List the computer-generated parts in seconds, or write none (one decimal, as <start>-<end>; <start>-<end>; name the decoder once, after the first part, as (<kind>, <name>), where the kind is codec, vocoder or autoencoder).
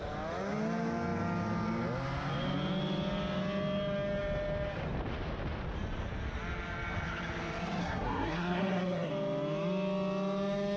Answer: 7.8-9.1 (codec, SNAC)